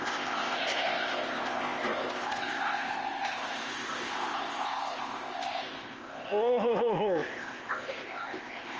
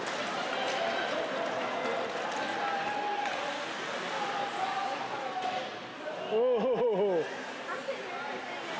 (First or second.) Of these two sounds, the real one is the second